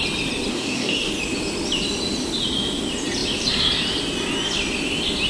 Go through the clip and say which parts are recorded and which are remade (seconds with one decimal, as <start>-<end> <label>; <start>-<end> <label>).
0.0-0.5 recorded; 0.5-1.1 remade; 1.1-5.3 recorded